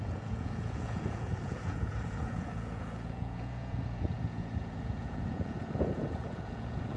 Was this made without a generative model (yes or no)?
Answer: no